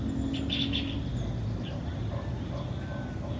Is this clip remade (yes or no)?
no